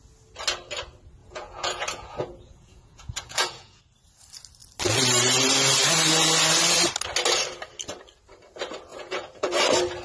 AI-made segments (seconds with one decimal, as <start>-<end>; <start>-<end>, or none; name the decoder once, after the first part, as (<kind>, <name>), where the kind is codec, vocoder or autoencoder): 1.2-3.8 (vocoder, Vocos); 8.9-9.5